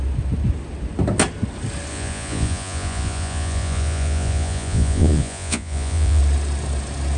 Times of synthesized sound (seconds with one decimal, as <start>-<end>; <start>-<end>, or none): 1.9-6.2